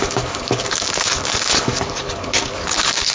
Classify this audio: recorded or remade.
remade